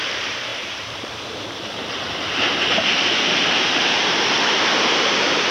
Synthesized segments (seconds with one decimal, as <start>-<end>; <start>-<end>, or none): 0.0-5.5

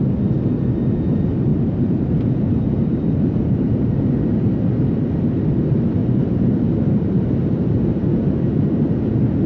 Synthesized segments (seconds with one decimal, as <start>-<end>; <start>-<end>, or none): 1.5-4.5; 6.0-7.7